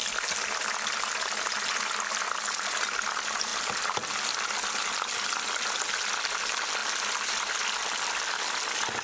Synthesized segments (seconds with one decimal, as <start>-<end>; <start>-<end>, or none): none